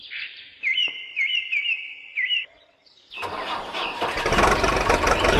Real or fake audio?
fake